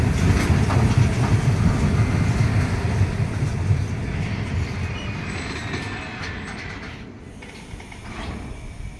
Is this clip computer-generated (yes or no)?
no